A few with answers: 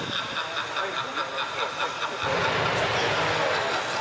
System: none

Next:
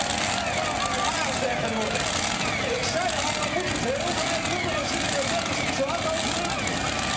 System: none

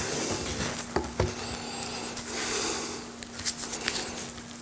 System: none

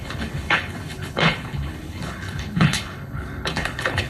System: codec, HILCodec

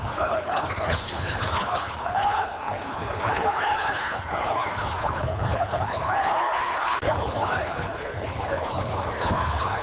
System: codec, HILCodec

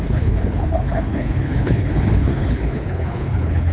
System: codec, HILCodec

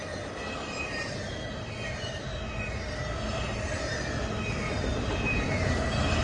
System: none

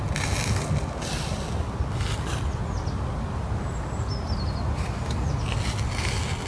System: none